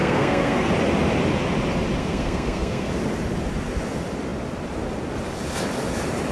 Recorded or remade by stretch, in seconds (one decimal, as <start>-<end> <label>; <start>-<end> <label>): 0.0-0.7 remade; 0.7-2.0 recorded; 2.0-2.9 remade; 2.9-6.3 recorded